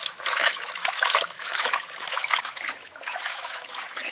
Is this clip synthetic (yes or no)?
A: yes